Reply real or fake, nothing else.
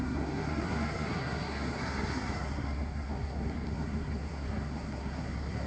fake